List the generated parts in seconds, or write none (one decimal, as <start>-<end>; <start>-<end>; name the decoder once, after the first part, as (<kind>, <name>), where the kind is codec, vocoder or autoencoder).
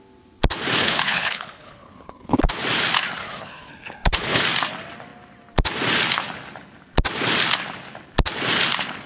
0.8-2.5 (codec, HILCodec); 3.2-4.4